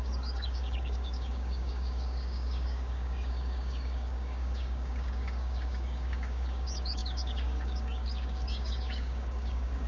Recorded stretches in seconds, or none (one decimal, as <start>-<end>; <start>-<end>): none

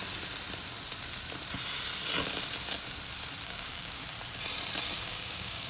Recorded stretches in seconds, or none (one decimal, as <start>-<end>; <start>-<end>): 0.0-3.4; 4.0-5.0

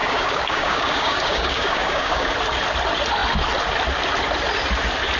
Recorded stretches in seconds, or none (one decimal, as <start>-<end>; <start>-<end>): 2.3-5.2

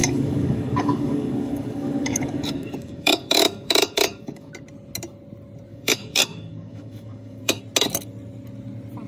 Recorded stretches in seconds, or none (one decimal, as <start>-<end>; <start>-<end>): 4.5-5.7; 7.6-9.1

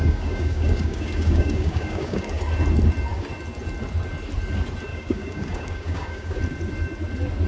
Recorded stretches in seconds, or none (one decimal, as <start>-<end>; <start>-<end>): 2.4-4.9; 6.4-7.5

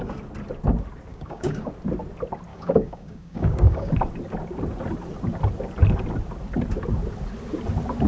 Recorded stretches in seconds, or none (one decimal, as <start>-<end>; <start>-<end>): 0.0-1.1; 1.7-2.5; 3.9-8.1